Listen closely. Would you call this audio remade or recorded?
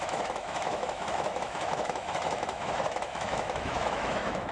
remade